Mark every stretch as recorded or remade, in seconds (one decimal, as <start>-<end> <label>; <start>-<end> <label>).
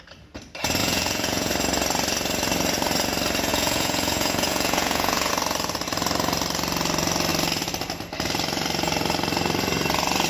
0.0-0.8 recorded; 0.8-1.5 remade; 1.5-3.5 recorded; 3.5-5.3 remade; 5.3-10.3 recorded